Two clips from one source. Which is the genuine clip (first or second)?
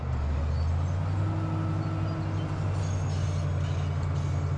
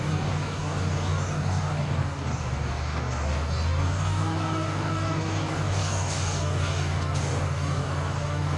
first